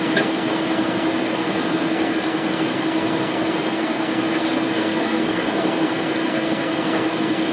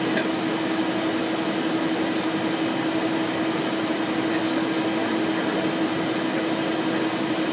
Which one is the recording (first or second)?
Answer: second